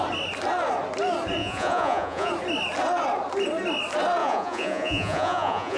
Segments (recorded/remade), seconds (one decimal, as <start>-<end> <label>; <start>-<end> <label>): 0.0-1.4 recorded; 1.4-2.3 remade; 2.3-4.2 recorded; 4.2-5.8 remade